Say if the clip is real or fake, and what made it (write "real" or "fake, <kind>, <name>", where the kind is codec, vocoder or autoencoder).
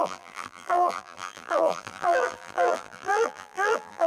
fake, vocoder, BigVGAN v2